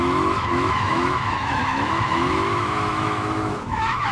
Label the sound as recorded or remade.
remade